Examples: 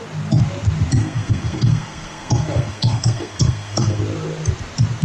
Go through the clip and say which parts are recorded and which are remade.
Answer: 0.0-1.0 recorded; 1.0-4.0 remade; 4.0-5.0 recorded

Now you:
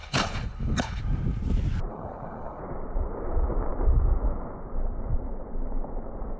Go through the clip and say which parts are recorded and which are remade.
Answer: 0.0-1.0 remade; 1.0-1.9 recorded; 1.9-2.6 remade; 2.6-6.4 recorded

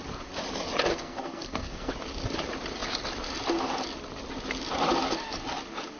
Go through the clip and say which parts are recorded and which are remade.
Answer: 0.0-0.9 recorded; 0.9-1.9 remade; 1.9-6.0 recorded